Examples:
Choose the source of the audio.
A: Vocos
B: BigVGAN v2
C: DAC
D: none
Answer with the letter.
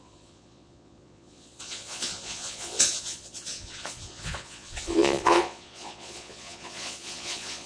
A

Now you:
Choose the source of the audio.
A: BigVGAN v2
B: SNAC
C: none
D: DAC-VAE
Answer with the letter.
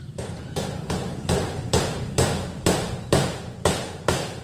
A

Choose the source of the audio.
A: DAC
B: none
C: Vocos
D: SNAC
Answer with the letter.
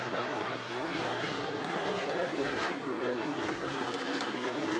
D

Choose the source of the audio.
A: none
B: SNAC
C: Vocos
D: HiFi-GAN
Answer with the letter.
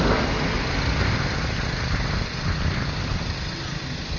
A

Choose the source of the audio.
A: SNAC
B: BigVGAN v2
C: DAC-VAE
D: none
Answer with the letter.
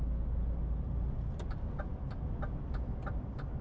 D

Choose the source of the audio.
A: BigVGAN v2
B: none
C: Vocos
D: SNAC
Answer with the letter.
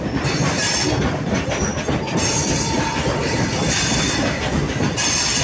B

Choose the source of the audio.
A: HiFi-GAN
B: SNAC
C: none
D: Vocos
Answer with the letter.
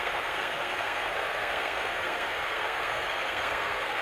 B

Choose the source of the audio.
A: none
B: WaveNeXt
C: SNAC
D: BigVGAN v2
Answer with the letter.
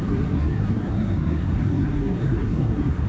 C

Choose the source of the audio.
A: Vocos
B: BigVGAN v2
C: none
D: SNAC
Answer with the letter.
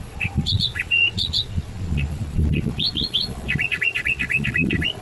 A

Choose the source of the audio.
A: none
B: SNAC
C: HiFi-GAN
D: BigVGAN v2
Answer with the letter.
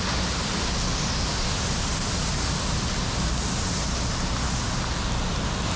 A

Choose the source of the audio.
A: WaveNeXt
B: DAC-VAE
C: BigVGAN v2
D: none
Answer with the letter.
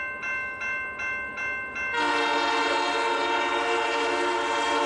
D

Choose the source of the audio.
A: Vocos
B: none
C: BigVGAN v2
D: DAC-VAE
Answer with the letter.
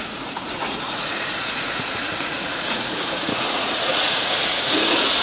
A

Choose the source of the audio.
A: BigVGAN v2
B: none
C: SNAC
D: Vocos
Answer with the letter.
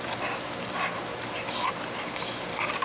B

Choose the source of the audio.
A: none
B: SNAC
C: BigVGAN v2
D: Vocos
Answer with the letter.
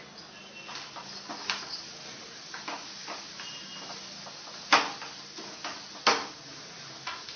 A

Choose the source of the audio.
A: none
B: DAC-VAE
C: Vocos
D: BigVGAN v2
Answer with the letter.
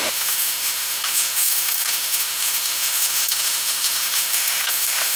B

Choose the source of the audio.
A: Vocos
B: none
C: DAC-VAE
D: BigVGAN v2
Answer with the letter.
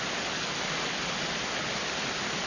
D